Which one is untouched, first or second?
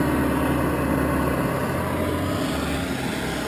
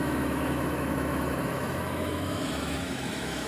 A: first